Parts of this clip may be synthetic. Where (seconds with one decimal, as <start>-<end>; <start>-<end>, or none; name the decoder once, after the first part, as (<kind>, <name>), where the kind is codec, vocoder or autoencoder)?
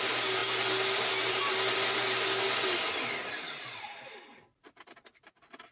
none